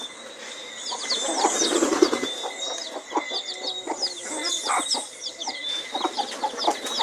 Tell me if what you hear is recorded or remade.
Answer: recorded